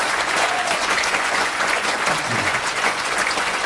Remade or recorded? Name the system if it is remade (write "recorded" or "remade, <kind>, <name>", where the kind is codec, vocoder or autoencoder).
remade, vocoder, Vocos